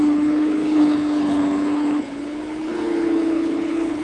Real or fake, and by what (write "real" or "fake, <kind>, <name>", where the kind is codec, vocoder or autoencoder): fake, codec, HILCodec